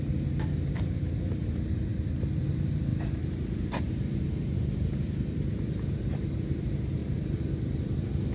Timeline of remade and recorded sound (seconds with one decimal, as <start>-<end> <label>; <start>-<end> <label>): 0.0-1.9 remade; 1.9-2.4 recorded; 2.4-8.3 remade

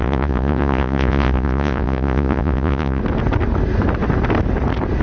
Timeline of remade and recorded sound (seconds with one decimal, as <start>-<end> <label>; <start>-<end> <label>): 0.0-3.0 remade; 3.0-5.0 recorded

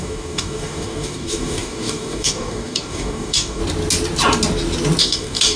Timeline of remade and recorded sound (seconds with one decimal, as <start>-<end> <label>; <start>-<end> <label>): 0.0-3.6 remade; 3.6-5.0 recorded; 5.0-5.6 remade

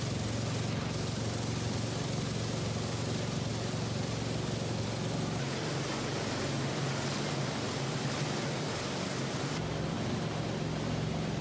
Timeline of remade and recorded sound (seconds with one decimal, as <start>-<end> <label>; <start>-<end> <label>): 0.0-11.4 recorded

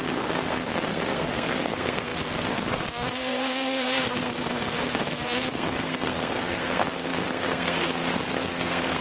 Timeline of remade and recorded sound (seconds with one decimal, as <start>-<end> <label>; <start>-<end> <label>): 0.0-9.0 remade

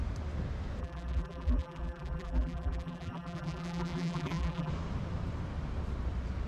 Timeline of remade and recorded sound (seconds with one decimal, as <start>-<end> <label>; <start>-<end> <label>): 0.0-0.8 recorded; 0.8-4.7 remade; 4.7-6.5 recorded